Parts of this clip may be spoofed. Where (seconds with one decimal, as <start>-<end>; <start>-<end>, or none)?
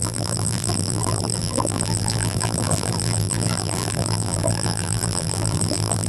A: 0.0-6.1